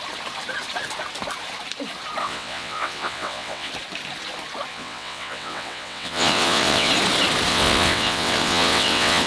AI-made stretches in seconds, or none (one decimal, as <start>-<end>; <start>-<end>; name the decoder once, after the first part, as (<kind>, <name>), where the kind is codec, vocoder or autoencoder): 2.2-3.7 (vocoder, WaveNeXt); 4.7-6.9; 7.5-9.3